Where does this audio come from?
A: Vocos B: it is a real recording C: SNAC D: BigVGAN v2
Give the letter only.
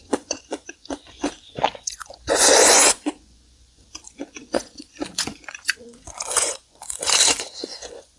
A